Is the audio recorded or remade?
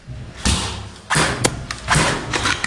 recorded